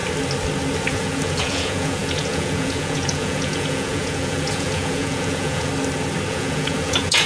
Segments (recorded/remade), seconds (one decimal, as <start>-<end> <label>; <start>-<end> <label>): 0.0-0.9 recorded; 0.9-5.7 remade; 5.7-6.3 recorded; 6.3-7.3 remade